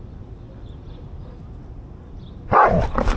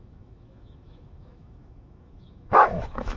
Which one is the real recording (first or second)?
first